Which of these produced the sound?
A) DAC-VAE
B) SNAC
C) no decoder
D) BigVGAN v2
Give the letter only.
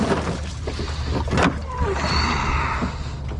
C